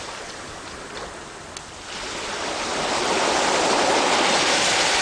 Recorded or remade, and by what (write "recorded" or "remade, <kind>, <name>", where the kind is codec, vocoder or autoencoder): recorded